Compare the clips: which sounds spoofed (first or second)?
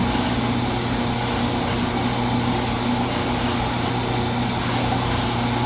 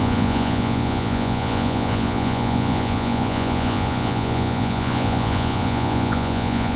second